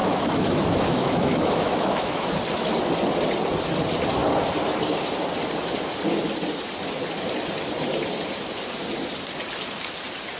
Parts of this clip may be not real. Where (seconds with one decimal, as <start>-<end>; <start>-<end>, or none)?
0.0-2.3